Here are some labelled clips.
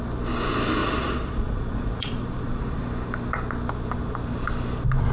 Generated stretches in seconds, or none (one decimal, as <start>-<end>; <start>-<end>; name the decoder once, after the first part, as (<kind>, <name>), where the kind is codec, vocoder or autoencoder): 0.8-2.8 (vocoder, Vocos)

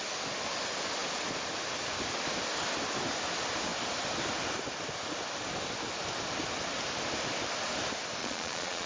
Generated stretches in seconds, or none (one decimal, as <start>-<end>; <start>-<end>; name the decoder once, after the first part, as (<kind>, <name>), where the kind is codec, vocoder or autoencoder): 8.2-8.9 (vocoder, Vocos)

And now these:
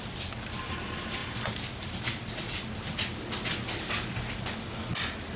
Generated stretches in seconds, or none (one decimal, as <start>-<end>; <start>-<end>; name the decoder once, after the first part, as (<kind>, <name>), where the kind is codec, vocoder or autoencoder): none